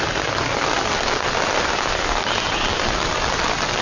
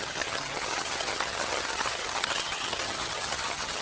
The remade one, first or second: second